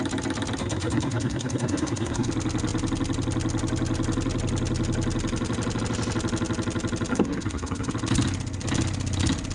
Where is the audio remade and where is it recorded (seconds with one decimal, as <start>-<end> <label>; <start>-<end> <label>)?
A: 0.0-0.6 recorded; 0.6-2.3 remade; 2.3-7.1 recorded; 7.1-7.9 remade; 7.9-9.5 recorded